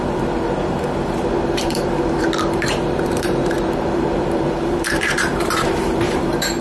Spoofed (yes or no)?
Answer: yes